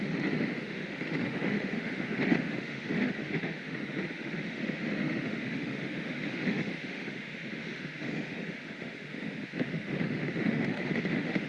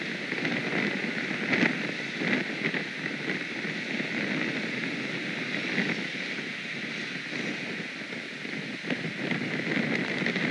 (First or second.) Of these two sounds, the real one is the second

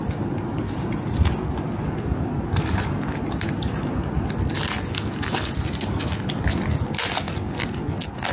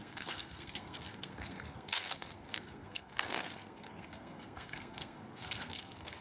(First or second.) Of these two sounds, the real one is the first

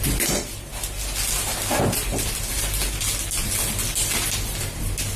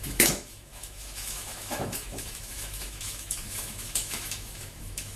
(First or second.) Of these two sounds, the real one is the first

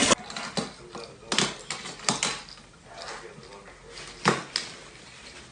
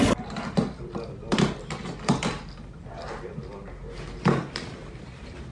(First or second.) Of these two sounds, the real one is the first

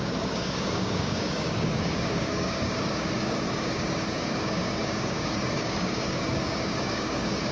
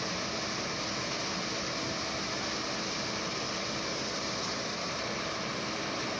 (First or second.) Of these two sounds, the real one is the second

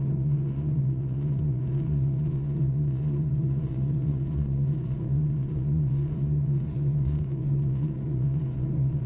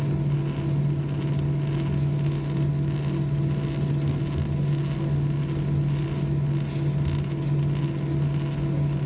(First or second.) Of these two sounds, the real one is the second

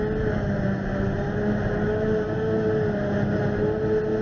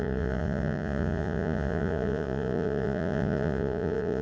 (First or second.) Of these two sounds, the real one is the first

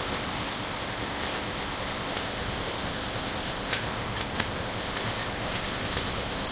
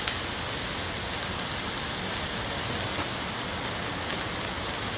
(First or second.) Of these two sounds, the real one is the second